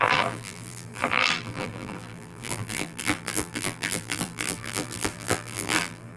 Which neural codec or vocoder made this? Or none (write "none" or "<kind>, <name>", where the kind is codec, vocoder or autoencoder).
vocoder, BigVGAN v2